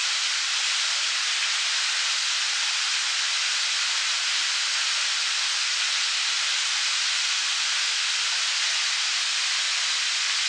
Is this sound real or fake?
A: real